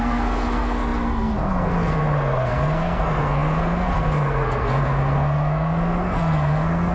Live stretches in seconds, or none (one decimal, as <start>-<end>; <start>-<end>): none